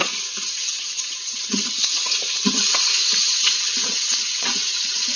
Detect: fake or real fake